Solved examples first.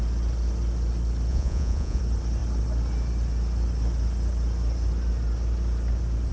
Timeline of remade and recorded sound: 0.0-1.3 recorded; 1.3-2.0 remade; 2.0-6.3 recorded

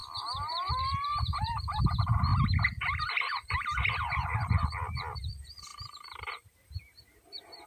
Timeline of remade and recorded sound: 0.0-2.3 remade; 2.3-3.0 recorded; 3.0-7.7 remade

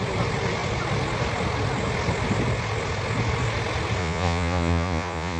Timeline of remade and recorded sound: 0.0-4.0 recorded; 4.0-5.4 remade

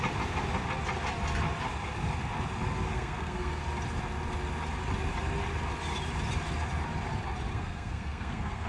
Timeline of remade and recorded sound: 0.0-2.9 recorded; 2.9-3.6 remade; 3.6-7.5 recorded; 7.5-8.7 remade

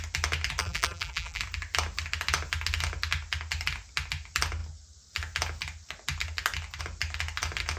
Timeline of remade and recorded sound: 0.0-0.6 recorded; 0.6-1.4 remade; 1.4-7.8 recorded